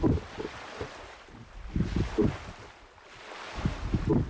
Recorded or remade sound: recorded